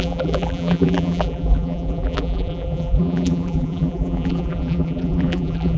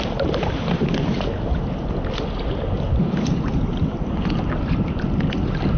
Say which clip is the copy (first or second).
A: first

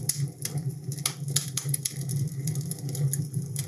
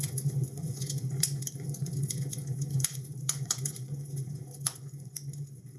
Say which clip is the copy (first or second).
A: second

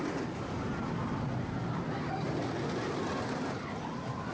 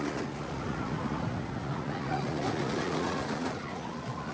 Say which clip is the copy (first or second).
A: second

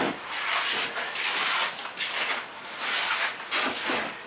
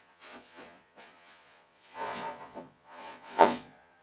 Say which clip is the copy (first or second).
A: second